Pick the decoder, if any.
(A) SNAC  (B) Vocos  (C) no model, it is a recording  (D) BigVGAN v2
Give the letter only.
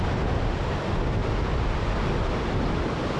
C